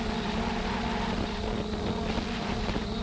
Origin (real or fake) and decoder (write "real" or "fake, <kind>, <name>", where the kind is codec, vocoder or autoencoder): real